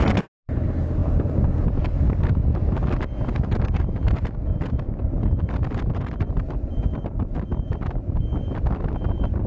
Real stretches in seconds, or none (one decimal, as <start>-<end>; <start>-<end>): 0.0-9.5